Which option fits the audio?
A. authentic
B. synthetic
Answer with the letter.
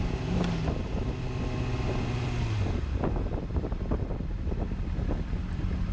A